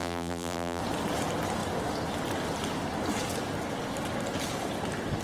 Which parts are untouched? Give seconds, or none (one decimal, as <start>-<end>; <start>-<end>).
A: 0.8-5.2